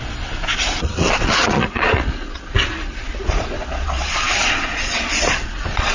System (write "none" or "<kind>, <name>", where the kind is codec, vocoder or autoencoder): vocoder, Vocos